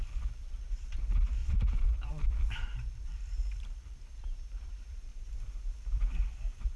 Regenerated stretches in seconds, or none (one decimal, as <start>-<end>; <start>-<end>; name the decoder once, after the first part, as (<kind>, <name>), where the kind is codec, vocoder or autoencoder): 0.0-5.1 (vocoder, BigVGAN v2)